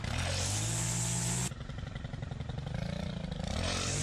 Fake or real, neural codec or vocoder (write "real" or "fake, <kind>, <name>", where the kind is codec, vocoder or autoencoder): real